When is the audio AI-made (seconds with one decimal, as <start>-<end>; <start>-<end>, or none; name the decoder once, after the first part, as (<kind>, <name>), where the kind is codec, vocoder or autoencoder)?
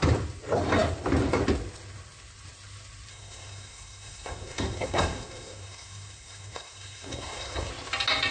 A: 3.1-7.7 (codec, SNAC)